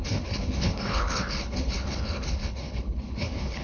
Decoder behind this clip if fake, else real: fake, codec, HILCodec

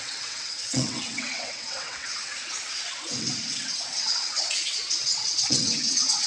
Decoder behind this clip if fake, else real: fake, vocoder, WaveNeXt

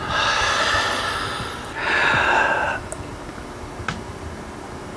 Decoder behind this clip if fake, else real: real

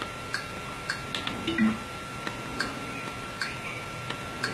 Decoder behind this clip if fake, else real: real